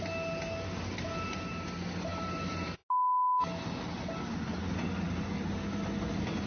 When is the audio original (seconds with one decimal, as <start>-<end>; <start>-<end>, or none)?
0.0-6.5